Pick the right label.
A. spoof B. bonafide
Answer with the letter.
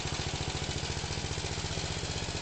B